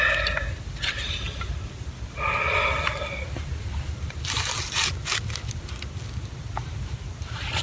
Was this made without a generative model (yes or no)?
yes